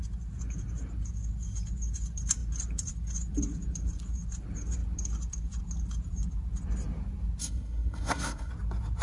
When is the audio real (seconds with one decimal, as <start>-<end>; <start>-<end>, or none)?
0.0-7.4; 8.5-9.0